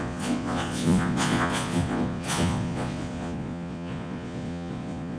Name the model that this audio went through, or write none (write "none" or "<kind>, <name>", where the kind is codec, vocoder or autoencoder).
vocoder, Vocos